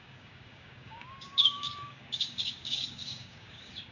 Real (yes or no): no